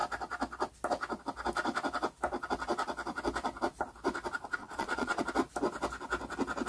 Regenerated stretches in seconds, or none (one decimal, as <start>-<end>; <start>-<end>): 4.6-5.2